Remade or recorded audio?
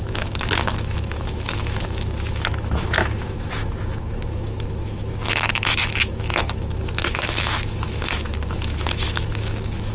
remade